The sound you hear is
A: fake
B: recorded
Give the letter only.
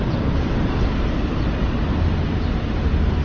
B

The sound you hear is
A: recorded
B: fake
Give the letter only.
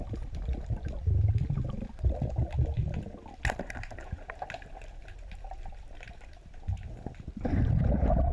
A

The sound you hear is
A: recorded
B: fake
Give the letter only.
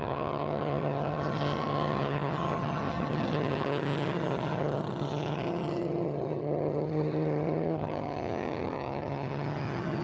B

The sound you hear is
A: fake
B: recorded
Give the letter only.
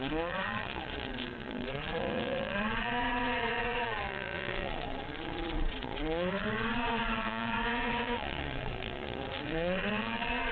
A